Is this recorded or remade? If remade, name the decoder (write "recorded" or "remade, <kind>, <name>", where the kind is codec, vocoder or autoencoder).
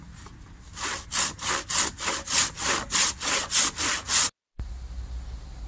recorded